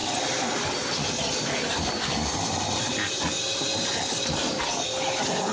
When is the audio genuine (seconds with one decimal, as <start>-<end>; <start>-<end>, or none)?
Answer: 0.0-5.5